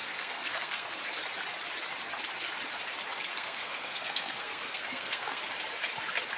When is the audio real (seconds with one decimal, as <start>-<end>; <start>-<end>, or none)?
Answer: 1.0-3.3; 5.4-6.4